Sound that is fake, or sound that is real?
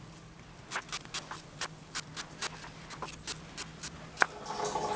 real